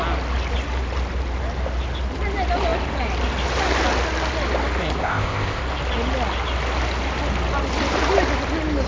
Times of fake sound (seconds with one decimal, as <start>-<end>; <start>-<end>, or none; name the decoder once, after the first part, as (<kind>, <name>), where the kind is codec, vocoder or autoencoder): 5.0-5.6 (codec, ZipCodec)